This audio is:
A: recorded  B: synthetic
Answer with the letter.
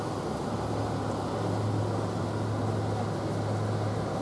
A